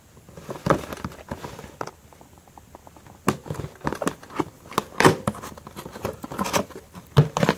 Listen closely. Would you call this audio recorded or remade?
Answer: recorded